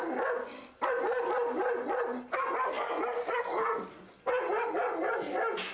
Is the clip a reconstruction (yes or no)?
no